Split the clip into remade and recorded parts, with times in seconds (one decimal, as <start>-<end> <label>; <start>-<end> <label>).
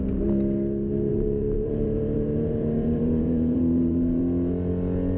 0.0-1.1 recorded; 1.1-4.2 remade; 4.2-5.2 recorded